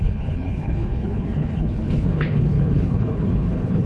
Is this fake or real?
fake